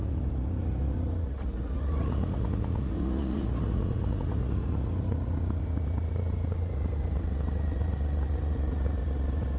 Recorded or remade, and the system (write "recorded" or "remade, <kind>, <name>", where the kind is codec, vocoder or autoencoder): remade, vocoder, Vocos